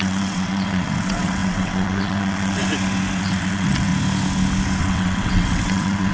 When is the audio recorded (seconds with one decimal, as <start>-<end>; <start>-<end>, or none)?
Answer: 2.6-3.2; 3.9-4.8